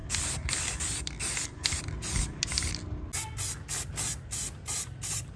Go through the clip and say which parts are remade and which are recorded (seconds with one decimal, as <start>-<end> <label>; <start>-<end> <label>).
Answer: 0.0-5.4 recorded

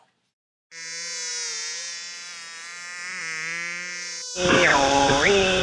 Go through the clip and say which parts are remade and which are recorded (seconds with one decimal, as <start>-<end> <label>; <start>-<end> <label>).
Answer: 0.0-4.7 recorded; 4.7-5.6 remade

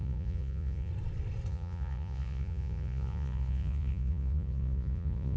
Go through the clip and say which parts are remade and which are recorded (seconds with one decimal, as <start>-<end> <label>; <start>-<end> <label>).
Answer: 0.0-0.9 remade; 0.9-1.5 recorded; 1.5-5.4 remade

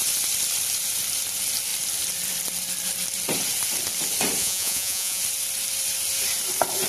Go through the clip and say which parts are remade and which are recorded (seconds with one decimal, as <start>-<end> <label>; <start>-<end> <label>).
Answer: 0.0-4.4 recorded; 4.4-5.2 remade; 5.2-6.9 recorded

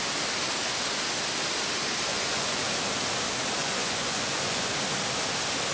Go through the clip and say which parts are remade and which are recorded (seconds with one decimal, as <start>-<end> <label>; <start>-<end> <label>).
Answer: 0.0-2.1 recorded; 2.1-2.6 remade; 2.6-3.6 recorded; 3.6-4.7 remade; 4.7-5.7 recorded

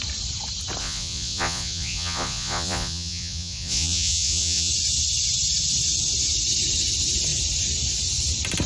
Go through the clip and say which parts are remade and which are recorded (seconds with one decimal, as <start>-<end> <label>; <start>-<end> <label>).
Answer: 0.0-0.8 recorded; 0.8-4.7 remade; 4.7-8.7 recorded